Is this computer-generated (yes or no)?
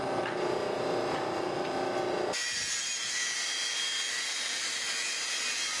no